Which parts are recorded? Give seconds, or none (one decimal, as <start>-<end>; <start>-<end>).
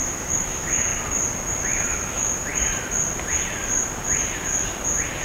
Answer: 0.9-1.6; 2.5-5.2